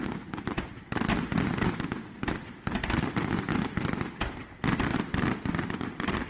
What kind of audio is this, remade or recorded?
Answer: recorded